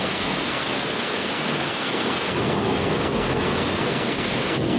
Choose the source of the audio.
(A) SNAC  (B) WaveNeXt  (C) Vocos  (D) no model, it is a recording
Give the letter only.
A